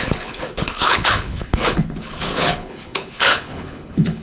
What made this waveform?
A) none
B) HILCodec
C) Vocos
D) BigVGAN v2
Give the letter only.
B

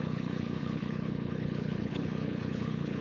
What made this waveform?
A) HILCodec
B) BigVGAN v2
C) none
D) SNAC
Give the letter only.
A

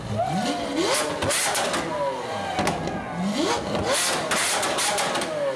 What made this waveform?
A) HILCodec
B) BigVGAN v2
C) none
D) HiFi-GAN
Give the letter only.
C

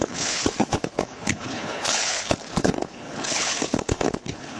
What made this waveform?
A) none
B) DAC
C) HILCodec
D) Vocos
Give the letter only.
C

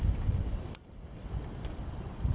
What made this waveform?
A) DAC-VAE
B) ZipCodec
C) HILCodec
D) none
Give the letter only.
D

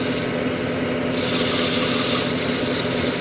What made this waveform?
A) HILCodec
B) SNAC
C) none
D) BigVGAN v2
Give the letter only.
C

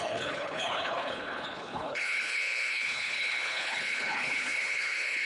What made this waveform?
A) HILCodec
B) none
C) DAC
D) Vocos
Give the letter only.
A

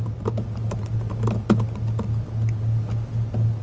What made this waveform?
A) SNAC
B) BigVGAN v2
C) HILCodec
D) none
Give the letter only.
D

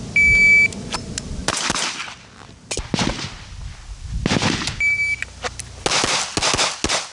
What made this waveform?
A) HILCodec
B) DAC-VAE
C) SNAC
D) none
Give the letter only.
D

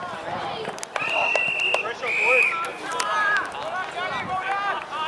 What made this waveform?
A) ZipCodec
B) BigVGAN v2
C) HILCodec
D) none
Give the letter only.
D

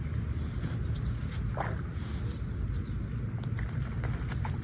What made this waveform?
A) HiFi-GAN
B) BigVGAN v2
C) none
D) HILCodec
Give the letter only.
C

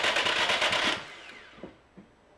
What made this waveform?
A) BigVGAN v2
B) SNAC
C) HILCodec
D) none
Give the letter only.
D